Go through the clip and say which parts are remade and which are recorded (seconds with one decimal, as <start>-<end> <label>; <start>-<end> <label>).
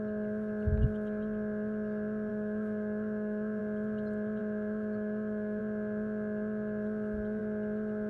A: 0.0-2.3 recorded; 2.3-3.6 remade; 3.6-4.4 recorded; 4.4-5.6 remade; 5.6-8.1 recorded